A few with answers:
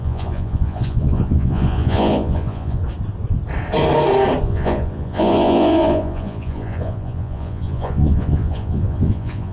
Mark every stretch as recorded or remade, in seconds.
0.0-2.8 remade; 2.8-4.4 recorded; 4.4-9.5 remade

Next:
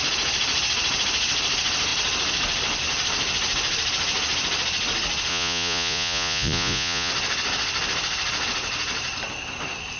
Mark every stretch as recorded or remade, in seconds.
0.0-5.3 recorded; 5.3-7.1 remade; 7.1-10.0 recorded

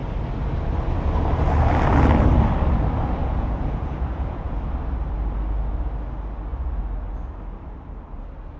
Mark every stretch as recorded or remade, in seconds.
0.0-3.2 recorded; 3.2-4.6 remade; 4.6-8.6 recorded

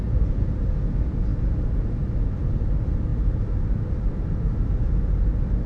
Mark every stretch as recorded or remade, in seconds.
0.0-5.7 recorded

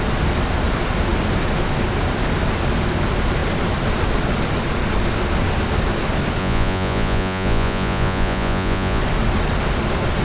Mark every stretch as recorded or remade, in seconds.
0.0-6.4 recorded; 6.4-9.0 remade; 9.0-10.2 recorded